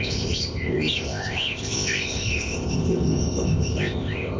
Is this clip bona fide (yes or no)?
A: no